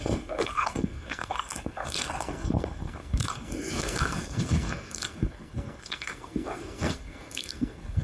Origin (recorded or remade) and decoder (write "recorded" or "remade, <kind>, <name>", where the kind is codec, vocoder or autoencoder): remade, codec, SNAC